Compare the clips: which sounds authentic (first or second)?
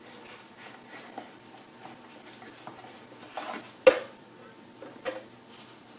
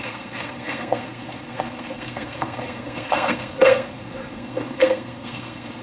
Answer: first